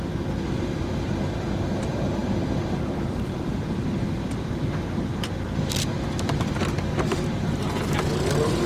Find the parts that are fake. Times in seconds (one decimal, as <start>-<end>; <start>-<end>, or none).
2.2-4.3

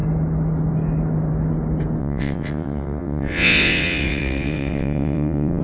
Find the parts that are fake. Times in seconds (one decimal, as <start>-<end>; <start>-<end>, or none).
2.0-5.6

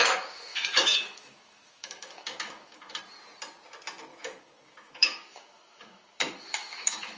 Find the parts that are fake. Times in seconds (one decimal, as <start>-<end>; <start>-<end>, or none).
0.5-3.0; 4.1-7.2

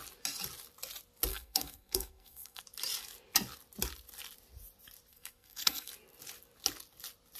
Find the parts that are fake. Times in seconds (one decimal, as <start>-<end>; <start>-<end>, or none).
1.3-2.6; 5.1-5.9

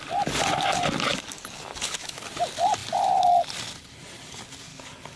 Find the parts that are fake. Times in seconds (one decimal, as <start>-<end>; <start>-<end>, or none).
1.1-2.2; 4.7-5.2

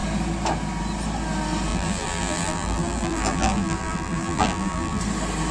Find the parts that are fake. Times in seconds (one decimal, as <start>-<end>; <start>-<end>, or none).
1.7-5.0

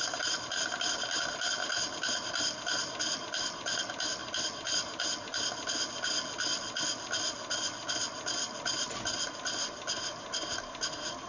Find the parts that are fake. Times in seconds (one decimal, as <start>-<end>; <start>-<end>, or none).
none